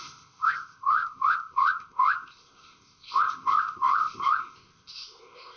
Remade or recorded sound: remade